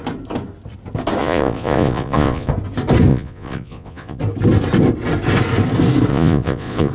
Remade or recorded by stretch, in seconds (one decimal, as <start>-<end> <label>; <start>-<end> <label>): 0.0-1.2 recorded; 1.2-2.5 remade; 2.5-3.1 recorded; 3.1-4.2 remade; 4.2-6.1 recorded; 6.1-6.9 remade